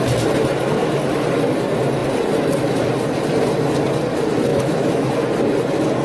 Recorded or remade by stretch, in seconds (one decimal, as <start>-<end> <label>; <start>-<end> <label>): 0.0-4.5 recorded; 4.5-5.1 remade; 5.1-6.0 recorded

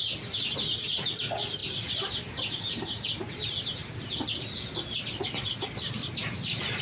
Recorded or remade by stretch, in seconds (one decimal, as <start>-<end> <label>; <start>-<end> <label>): 0.0-3.8 remade; 3.8-5.1 recorded; 5.1-6.8 remade

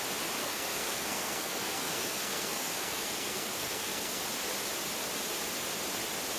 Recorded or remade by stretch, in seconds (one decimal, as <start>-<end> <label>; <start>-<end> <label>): 0.0-0.4 recorded; 0.4-4.2 remade; 4.2-6.4 recorded

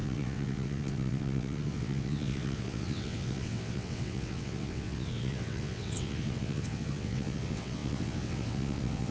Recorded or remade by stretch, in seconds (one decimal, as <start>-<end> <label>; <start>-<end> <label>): 0.0-9.1 remade